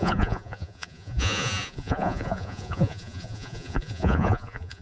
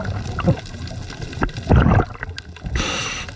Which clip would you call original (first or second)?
second